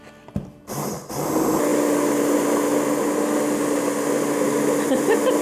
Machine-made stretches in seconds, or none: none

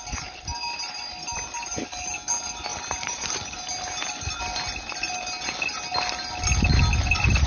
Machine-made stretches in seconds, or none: 2.7-3.4 (vocoder, BigVGAN v2)

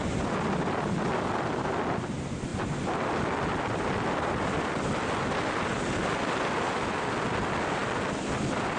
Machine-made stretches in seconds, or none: none